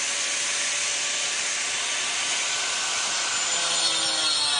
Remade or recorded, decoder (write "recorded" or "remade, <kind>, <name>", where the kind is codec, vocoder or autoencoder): recorded